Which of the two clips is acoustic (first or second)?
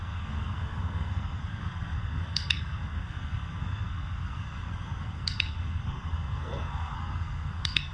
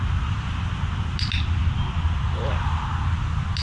second